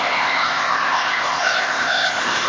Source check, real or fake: fake